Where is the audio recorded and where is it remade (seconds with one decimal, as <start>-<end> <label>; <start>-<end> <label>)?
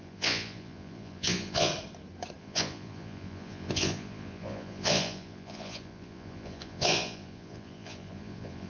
0.0-1.7 remade; 1.7-2.4 recorded; 2.4-8.7 remade